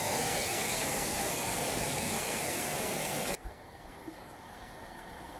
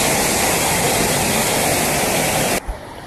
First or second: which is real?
second